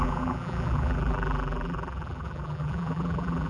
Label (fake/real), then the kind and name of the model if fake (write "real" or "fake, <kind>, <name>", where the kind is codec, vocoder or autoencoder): fake, vocoder, BigVGAN v2